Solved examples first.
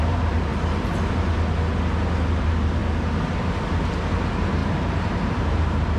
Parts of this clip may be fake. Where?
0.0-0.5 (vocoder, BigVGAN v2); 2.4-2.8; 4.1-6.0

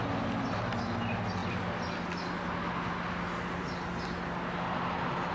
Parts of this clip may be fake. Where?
none

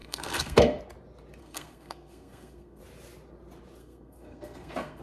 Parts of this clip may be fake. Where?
0.0-0.8 (codec, SNAC); 1.4-2.8; 3.8-5.0

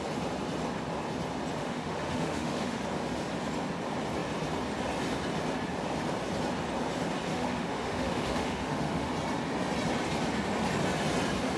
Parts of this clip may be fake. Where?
1.6-2.8 (autoencoder, DAC-VAE); 7.3-9.1

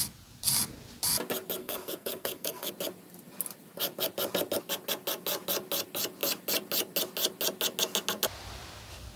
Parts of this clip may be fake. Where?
1.6-2.7 (codec, SNAC)